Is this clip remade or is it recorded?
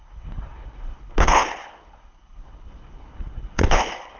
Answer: remade